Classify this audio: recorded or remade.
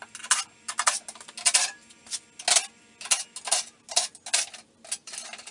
recorded